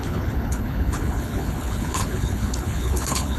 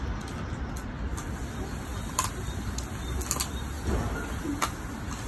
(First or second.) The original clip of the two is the second